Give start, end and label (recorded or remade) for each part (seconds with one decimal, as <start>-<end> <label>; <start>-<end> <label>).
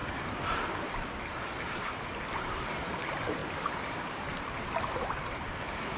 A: 0.0-0.6 remade; 0.6-3.4 recorded; 3.4-5.5 remade; 5.5-6.0 recorded